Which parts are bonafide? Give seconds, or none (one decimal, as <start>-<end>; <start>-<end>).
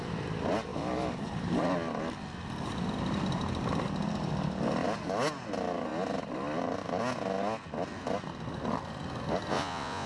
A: 0.0-9.5